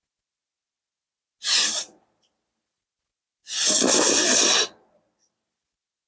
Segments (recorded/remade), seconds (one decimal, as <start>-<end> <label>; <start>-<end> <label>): 0.0-6.1 recorded